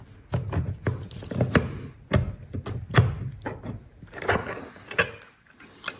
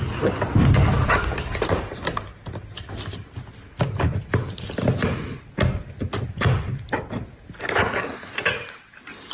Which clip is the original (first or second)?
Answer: first